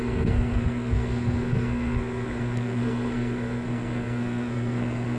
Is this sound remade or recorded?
remade